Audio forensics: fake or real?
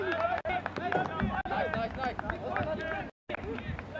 real